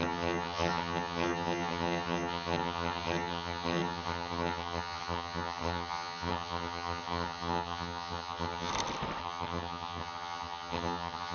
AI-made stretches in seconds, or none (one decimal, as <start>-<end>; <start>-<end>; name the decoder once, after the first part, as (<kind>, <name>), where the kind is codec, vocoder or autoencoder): 0.0-8.7 (vocoder, HiFi-GAN); 9.2-11.3